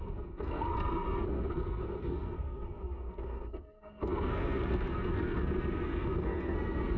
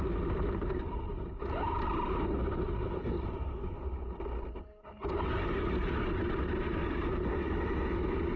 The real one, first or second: second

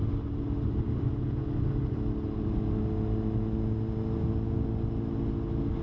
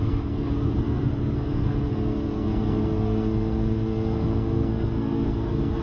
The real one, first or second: first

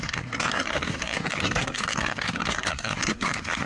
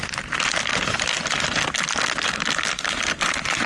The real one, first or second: second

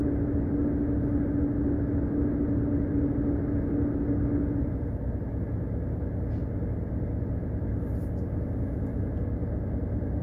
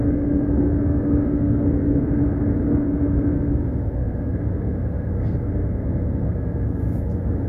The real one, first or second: first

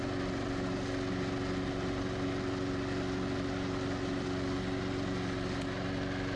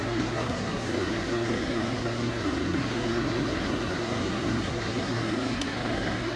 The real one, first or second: first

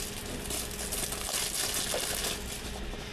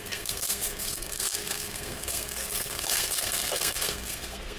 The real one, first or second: first